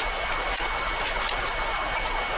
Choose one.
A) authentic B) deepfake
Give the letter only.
A